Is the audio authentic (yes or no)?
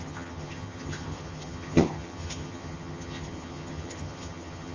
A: no